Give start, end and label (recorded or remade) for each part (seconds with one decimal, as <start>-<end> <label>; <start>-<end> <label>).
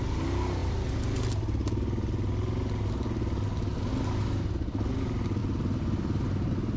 0.0-6.8 recorded